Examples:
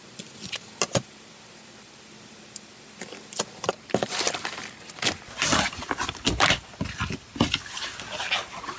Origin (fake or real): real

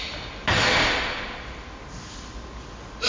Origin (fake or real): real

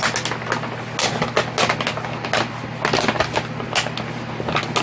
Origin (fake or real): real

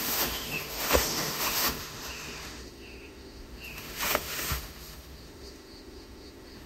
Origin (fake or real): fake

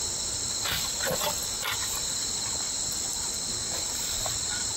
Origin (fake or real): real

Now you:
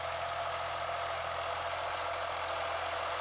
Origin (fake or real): real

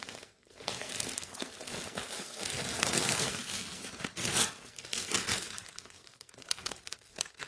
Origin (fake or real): fake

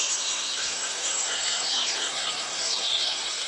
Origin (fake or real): fake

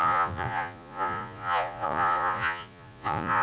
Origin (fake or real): fake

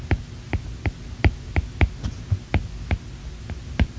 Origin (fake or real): real